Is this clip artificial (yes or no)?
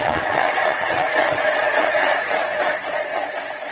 yes